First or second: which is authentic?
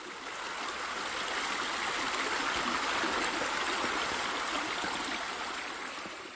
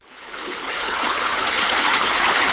first